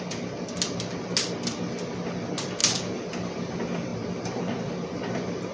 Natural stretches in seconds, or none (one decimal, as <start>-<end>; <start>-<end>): 0.0-2.6; 3.5-5.5